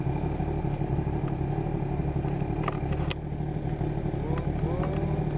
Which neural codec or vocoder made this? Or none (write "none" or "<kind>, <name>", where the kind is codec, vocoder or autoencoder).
none